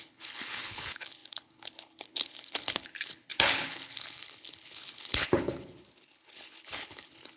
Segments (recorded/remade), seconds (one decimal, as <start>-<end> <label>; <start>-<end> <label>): 0.0-7.4 remade